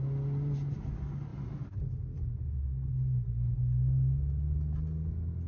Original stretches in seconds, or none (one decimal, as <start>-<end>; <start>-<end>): 0.0-5.5